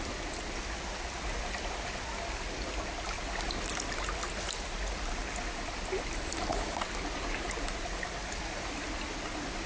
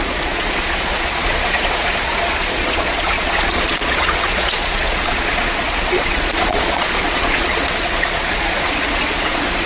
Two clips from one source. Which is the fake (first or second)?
second